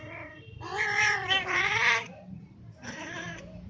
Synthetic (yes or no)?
yes